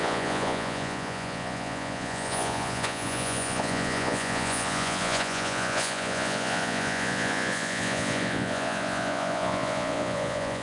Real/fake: fake